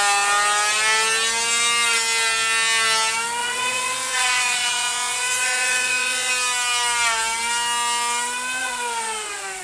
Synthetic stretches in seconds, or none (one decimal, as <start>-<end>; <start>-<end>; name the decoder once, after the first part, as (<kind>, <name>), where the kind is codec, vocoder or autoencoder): 3.4-6.3 (vocoder, Vocos); 8.6-9.6